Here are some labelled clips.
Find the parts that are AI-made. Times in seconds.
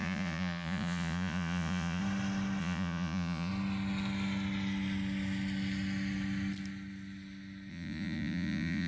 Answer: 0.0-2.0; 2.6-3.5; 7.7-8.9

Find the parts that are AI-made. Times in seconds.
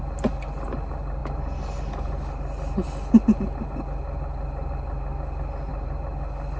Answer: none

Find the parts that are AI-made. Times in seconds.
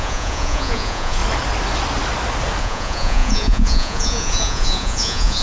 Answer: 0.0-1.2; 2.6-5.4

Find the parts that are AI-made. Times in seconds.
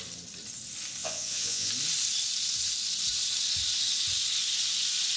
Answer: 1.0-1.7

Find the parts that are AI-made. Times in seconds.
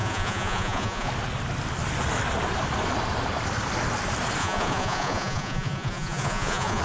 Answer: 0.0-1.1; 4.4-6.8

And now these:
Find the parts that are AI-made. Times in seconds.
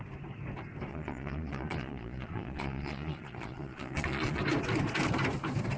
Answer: 0.9-4.4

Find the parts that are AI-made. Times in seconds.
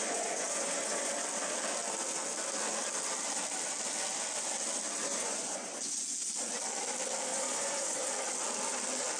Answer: 0.0-1.1; 5.1-5.8; 7.3-8.1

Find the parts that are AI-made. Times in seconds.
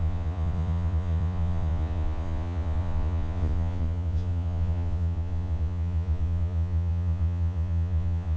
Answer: 0.0-8.4